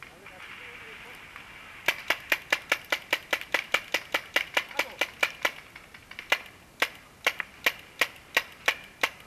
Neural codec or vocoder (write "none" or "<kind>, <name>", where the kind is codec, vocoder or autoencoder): none